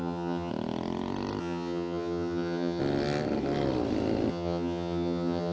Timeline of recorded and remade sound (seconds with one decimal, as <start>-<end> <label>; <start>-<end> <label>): 0.0-0.5 remade; 0.5-1.4 recorded; 1.4-2.8 remade; 2.8-4.3 recorded; 4.3-5.5 remade

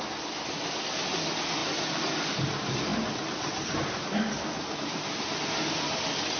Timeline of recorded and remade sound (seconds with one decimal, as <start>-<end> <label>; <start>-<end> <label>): 0.0-6.4 recorded

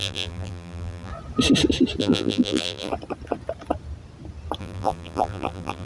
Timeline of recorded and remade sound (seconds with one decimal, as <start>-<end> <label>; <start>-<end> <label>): 0.0-1.1 remade; 1.1-2.0 recorded; 2.0-2.9 remade; 2.9-4.6 recorded; 4.6-5.9 remade

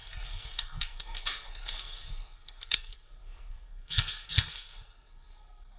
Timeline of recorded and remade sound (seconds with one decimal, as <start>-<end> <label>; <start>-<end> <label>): 0.0-5.8 remade

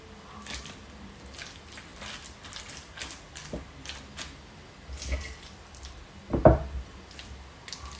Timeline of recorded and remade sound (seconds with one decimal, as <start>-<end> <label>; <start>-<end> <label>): 0.0-1.9 recorded; 1.9-2.6 remade; 2.6-8.0 recorded